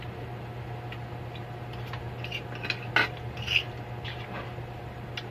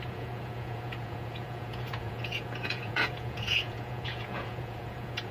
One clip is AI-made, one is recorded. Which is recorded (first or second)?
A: first